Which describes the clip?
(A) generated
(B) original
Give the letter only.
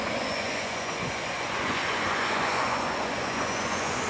A